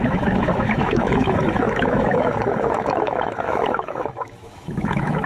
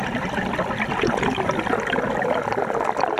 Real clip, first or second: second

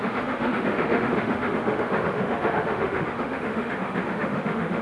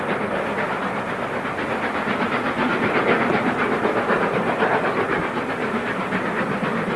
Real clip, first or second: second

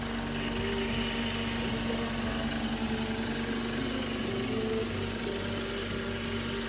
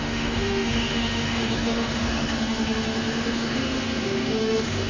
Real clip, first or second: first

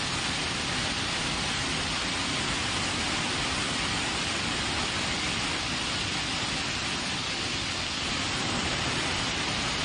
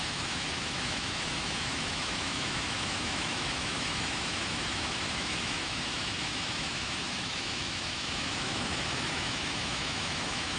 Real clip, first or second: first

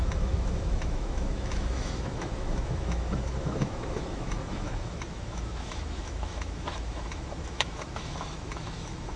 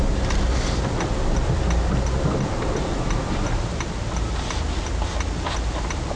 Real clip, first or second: second